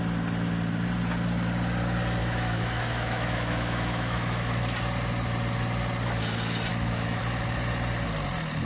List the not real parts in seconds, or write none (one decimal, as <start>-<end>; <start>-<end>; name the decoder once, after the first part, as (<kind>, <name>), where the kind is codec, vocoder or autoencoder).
2.2-4.6 (autoencoder, DAC-VAE); 6.7-7.2